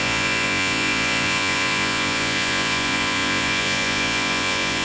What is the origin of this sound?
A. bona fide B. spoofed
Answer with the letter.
B